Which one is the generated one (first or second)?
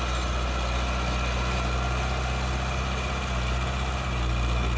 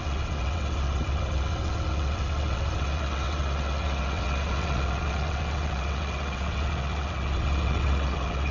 second